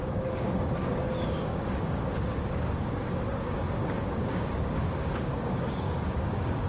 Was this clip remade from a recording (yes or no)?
yes